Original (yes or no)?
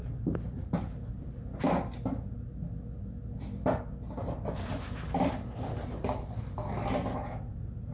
yes